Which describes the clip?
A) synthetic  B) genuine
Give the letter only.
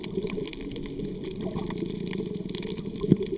B